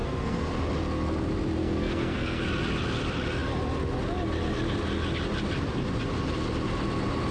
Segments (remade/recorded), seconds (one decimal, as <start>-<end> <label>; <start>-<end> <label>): 0.0-0.5 remade; 0.5-1.6 recorded; 1.6-2.4 remade; 2.4-7.3 recorded